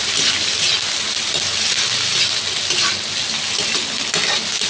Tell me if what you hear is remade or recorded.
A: recorded